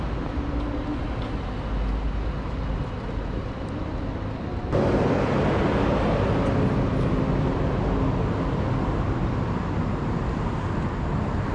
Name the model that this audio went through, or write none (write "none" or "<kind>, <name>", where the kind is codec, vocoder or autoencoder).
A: none